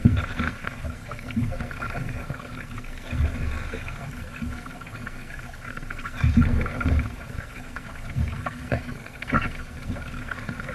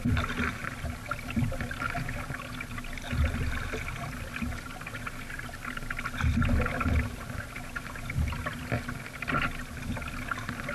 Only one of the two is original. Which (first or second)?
second